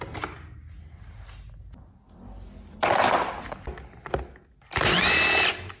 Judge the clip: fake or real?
real